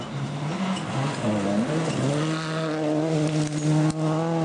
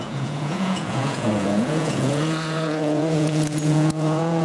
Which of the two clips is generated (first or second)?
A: second